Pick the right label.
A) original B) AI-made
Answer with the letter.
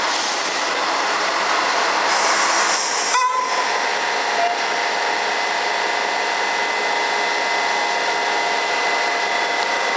A